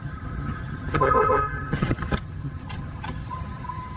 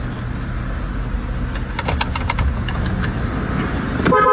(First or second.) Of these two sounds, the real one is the second